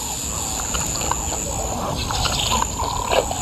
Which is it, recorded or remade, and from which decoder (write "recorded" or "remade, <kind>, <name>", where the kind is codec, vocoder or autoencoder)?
recorded